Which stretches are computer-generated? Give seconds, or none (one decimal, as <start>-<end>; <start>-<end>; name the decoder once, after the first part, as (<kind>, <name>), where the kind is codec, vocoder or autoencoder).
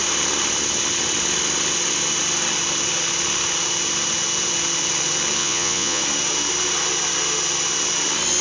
5.4-6.0 (vocoder, Vocos)